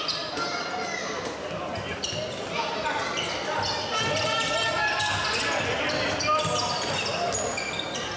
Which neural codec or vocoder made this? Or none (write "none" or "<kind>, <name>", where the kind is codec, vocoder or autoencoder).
none